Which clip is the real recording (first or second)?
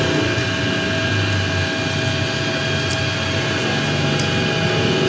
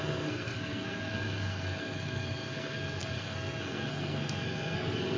first